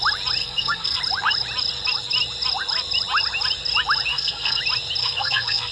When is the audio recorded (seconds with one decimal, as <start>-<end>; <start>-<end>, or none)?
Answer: 0.0-0.4; 1.0-4.1; 4.6-5.0